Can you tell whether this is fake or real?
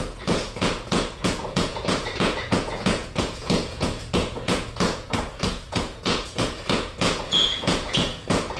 fake